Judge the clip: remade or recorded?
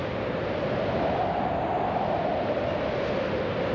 recorded